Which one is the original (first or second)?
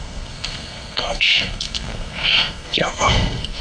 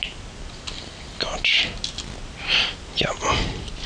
second